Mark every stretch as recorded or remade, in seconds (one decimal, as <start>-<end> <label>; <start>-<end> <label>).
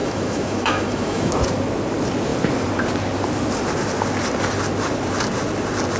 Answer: 0.0-1.3 remade; 1.3-6.0 recorded